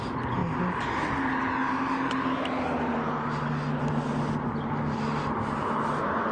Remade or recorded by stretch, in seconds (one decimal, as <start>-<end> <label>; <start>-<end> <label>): 0.0-6.3 recorded